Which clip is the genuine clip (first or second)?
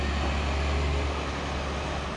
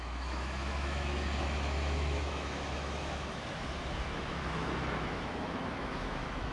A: first